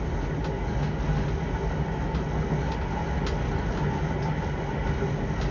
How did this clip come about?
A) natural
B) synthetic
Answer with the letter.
A